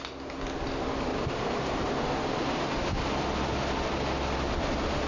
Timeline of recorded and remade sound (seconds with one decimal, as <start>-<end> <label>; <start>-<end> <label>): 0.0-1.1 recorded; 1.1-1.9 remade; 1.9-5.1 recorded